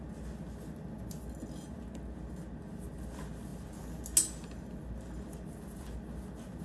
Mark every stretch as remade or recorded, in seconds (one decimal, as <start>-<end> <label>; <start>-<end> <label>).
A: 0.0-6.6 recorded